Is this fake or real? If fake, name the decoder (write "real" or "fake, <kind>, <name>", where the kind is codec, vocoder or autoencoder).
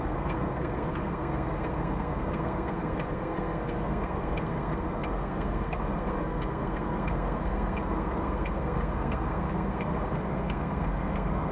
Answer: fake, codec, SNAC